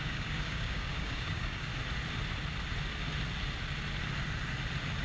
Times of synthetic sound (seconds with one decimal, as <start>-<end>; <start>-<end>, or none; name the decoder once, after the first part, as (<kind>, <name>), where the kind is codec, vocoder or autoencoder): 0.0-1.7 (codec, DAC)